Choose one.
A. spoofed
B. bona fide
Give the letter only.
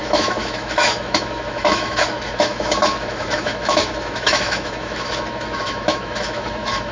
A